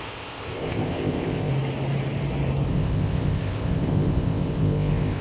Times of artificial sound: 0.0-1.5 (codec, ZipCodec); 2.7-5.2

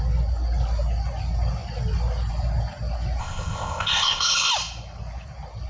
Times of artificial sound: 3.2-4.5 (codec, ZipCodec)

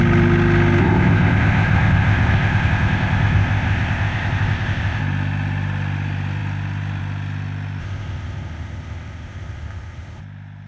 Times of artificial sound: 0.8-5.0 (codec, ZipCodec); 7.8-10.2

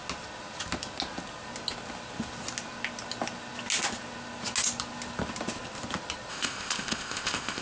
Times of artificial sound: 6.3-7.6 (codec, ZipCodec)

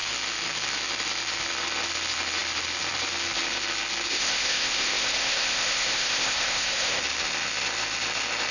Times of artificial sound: 4.1-7.0 (codec, ZipCodec)